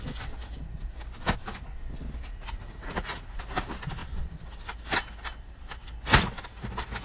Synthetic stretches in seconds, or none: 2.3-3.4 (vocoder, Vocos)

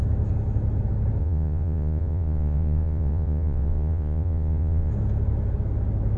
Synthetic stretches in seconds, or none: 1.2-4.9 (vocoder, Vocos)

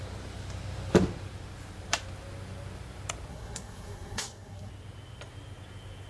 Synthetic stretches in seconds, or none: 3.3-4.7 (codec, SNAC)